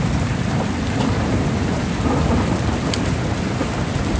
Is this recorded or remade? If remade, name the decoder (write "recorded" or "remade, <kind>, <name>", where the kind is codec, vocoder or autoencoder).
remade, vocoder, BigVGAN v2